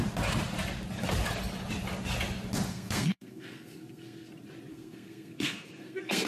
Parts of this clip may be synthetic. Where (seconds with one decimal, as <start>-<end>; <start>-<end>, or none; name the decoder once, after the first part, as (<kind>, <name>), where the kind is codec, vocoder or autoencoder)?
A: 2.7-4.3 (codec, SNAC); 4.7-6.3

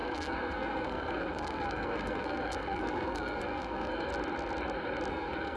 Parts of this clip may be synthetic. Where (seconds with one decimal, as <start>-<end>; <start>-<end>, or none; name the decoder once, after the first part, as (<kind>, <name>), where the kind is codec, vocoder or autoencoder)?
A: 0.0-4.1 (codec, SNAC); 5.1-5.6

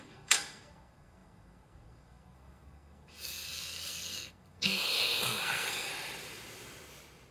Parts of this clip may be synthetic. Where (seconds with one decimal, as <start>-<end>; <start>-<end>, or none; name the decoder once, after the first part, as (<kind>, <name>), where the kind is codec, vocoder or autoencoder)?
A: 0.0-5.9 (codec, SNAC)